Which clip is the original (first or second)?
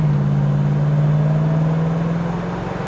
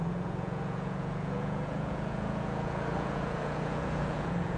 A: first